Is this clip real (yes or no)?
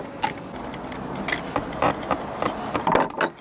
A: yes